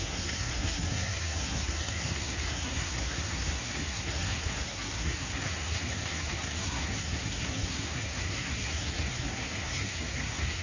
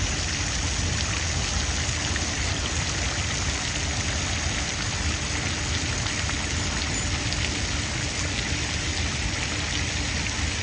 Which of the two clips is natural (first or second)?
second